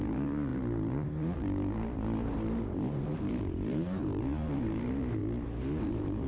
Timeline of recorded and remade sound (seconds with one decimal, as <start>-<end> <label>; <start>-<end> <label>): 0.0-5.2 remade; 5.2-5.8 recorded; 5.8-6.3 remade